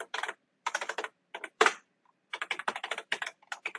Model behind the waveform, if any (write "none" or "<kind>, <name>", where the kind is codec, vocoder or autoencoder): vocoder, BigVGAN v2